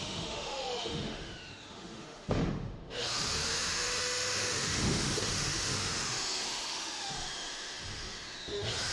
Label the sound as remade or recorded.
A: remade